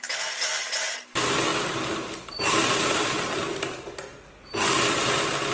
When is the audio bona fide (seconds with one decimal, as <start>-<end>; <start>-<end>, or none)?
0.0-5.5